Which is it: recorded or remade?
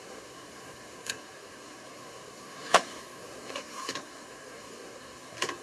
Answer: remade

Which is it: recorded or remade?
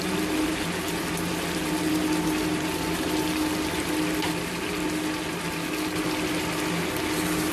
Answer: recorded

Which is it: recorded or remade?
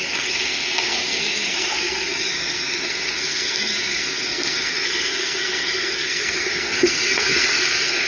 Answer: remade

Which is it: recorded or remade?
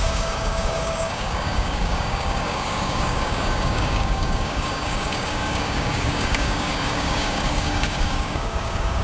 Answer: remade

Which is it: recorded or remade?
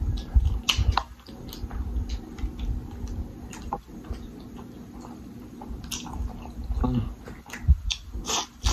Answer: recorded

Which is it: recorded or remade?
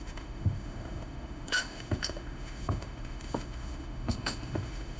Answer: remade